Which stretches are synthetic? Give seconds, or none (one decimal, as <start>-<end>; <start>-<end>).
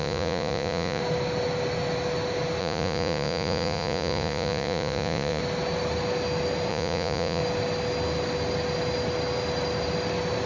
0.0-1.0; 2.6-5.4; 6.7-7.4